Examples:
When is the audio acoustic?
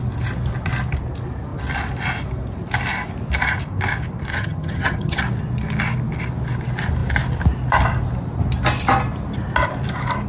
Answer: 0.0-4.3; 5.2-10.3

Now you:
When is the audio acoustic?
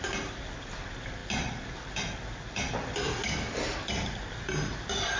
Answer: 0.0-5.2